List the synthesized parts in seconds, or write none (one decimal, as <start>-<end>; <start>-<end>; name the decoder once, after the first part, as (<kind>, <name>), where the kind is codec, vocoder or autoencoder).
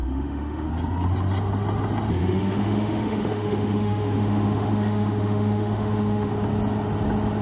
0.0-0.7 (autoencoder, DAC-VAE); 2.2-6.3